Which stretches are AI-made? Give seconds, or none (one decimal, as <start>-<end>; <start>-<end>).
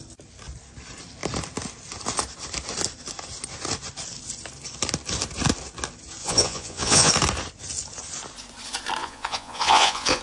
6.2-7.1; 9.0-10.2